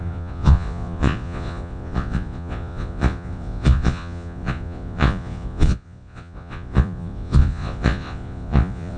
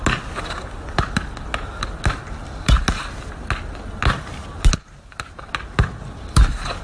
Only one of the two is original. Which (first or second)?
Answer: second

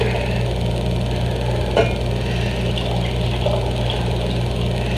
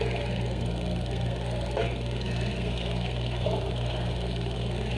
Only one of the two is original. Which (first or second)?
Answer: first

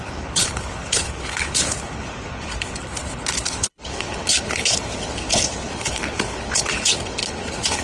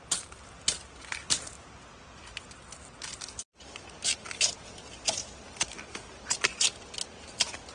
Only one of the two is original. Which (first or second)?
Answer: second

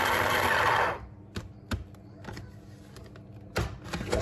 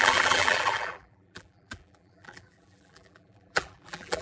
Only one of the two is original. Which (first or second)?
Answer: first